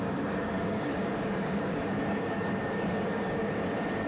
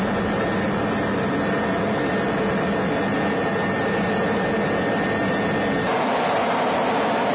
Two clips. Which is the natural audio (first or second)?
second